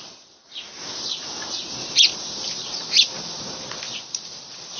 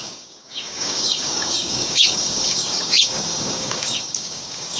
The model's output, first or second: second